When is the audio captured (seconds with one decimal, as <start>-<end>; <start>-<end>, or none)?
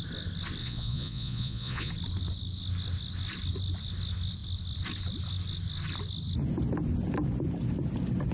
0.0-0.6; 1.9-8.3